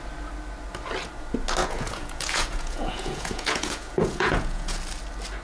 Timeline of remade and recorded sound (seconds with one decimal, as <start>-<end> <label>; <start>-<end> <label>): 0.0-1.6 recorded; 1.6-4.8 remade; 4.8-5.4 recorded